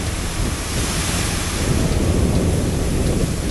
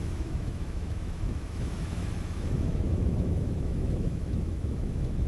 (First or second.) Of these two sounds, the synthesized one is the second